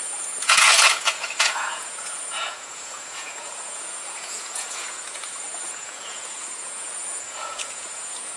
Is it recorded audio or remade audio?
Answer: remade